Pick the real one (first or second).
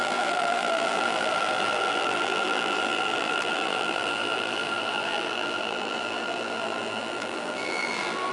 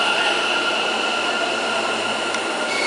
second